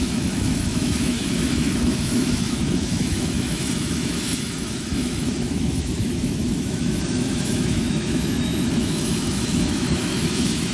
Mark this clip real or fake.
fake